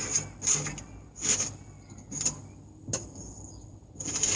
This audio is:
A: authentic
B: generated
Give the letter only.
A